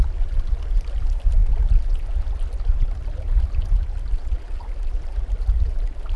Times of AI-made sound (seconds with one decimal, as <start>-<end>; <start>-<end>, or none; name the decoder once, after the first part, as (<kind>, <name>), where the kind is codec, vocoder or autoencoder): none